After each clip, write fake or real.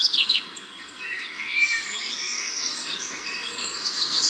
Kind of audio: fake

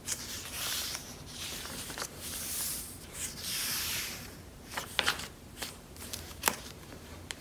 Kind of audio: fake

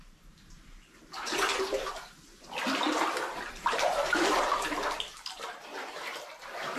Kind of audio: fake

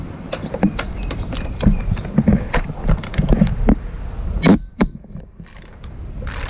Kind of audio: fake